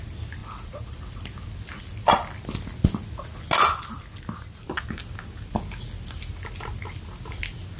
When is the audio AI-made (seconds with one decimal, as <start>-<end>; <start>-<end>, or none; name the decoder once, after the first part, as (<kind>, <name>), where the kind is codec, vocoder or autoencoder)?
none